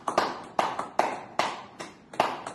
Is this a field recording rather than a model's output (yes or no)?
no